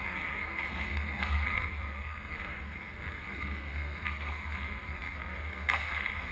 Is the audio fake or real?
fake